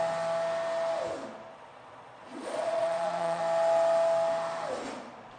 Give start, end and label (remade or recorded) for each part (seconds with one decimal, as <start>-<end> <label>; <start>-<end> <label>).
0.0-1.5 recorded; 1.5-3.4 remade; 3.4-5.4 recorded